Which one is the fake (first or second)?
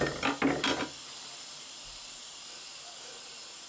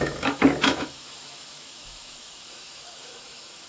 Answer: second